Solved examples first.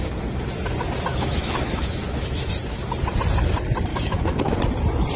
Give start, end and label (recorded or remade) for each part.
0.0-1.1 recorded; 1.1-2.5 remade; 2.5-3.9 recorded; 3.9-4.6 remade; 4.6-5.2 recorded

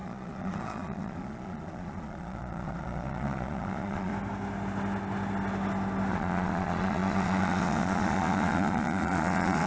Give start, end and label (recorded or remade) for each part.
0.0-4.1 remade; 4.1-6.1 recorded; 6.1-9.7 remade

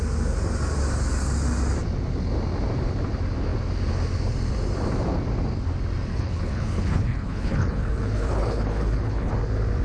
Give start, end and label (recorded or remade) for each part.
0.0-6.1 recorded; 6.1-9.3 remade; 9.3-9.8 recorded